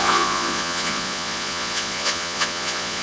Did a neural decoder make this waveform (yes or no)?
yes